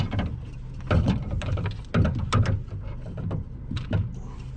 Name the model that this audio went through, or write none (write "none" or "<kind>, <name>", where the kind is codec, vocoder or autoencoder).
none